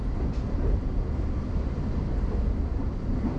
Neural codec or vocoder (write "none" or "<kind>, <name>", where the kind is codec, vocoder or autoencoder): vocoder, BigVGAN v2